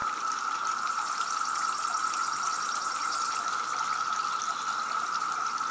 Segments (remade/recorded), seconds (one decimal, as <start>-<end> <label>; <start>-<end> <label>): 0.0-1.4 recorded; 1.4-5.7 remade